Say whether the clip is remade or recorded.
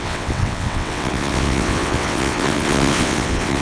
remade